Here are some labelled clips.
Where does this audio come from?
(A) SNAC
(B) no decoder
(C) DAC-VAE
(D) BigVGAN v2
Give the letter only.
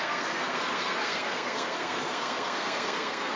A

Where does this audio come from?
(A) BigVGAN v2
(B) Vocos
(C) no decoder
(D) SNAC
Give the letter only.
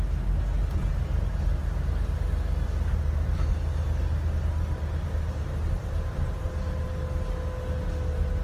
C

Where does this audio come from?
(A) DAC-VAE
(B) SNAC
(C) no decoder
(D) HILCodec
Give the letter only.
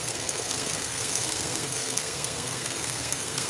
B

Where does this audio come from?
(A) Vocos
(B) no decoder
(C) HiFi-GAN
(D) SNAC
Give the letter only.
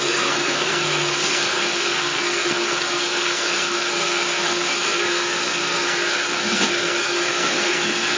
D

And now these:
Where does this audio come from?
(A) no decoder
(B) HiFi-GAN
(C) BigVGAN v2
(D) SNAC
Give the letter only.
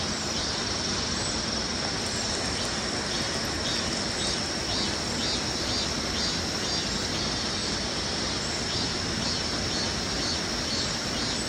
A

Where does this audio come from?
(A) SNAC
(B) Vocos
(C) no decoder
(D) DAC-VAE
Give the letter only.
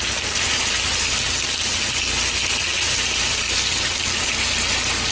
C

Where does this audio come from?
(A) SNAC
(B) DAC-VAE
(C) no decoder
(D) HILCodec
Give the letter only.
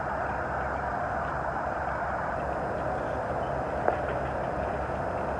C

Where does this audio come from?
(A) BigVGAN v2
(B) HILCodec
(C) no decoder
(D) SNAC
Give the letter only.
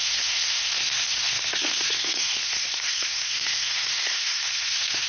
D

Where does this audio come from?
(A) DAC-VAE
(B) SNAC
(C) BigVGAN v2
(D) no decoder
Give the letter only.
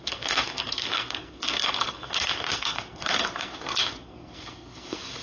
B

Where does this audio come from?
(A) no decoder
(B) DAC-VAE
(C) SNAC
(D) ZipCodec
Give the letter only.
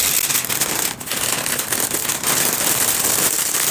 A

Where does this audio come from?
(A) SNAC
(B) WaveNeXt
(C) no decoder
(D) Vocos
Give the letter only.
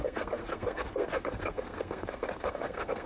A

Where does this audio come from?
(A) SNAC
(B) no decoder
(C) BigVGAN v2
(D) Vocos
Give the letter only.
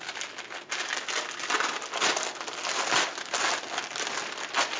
B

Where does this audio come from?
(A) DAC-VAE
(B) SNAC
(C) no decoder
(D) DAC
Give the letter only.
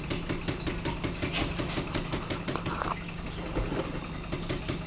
C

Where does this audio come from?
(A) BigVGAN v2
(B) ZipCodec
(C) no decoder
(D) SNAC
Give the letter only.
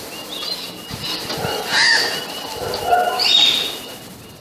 C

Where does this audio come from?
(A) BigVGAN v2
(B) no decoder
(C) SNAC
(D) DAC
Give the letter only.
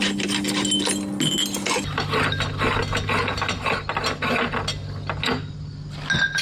B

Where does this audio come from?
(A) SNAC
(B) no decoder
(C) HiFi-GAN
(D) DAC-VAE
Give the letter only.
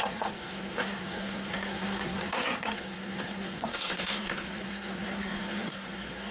A